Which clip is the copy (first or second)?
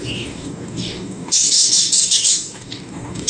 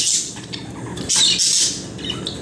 first